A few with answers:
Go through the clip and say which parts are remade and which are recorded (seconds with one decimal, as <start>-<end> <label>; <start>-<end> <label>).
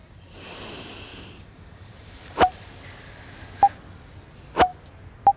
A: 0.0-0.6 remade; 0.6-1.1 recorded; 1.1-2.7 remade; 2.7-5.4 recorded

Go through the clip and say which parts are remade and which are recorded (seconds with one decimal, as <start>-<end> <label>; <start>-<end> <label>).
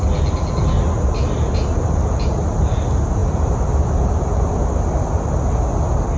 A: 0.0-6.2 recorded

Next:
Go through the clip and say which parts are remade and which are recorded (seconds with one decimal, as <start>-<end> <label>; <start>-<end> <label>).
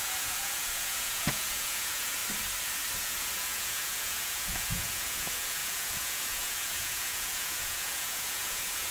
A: 0.0-2.2 remade; 2.2-3.0 recorded; 3.0-8.9 remade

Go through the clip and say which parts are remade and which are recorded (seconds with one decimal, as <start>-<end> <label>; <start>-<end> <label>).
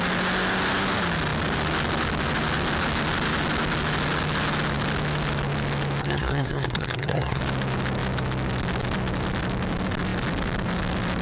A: 0.0-6.0 recorded; 6.0-7.4 remade; 7.4-11.2 recorded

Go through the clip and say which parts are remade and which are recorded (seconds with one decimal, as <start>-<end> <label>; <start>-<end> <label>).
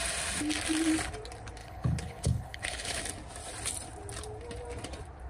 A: 0.0-1.6 recorded; 1.6-3.0 remade; 3.0-5.3 recorded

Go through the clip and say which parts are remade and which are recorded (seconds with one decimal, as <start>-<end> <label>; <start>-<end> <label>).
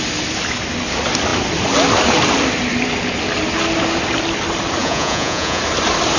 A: 0.0-4.8 recorded; 4.8-5.6 remade; 5.6-6.2 recorded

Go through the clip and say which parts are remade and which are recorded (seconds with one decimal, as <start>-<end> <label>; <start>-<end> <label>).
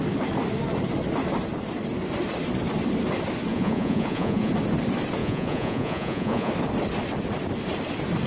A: 0.0-3.5 recorded; 3.5-4.5 remade; 4.5-5.2 recorded; 5.2-6.5 remade; 6.5-8.3 recorded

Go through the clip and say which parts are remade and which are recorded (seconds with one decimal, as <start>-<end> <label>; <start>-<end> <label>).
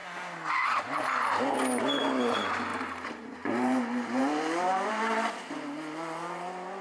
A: 0.0-2.7 recorded; 2.7-4.2 remade; 4.2-4.7 recorded; 4.7-5.3 remade; 5.3-6.8 recorded